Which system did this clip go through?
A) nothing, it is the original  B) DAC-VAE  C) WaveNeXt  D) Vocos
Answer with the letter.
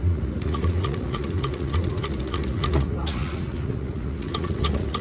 D